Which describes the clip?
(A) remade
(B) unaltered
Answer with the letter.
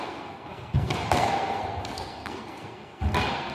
A